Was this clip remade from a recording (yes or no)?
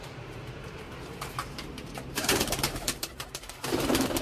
yes